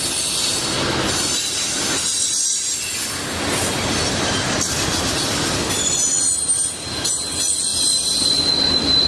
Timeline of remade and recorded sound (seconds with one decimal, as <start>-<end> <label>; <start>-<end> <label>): 0.0-2.1 recorded; 2.1-6.0 remade; 6.0-7.7 recorded; 7.7-9.1 remade